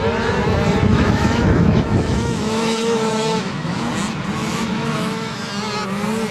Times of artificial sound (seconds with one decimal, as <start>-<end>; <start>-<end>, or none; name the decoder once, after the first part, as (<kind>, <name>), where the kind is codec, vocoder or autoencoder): 0.9-3.9 (autoencoder, DAC-VAE); 4.4-5.5